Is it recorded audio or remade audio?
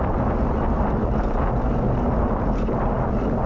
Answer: recorded